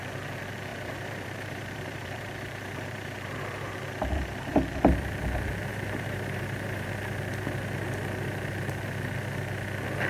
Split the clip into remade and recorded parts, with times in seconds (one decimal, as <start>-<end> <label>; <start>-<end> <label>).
0.0-0.7 recorded; 0.7-3.7 remade; 3.7-5.7 recorded; 5.7-6.9 remade; 6.9-10.1 recorded